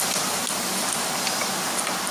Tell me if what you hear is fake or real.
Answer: real